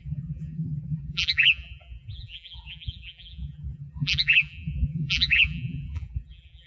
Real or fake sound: fake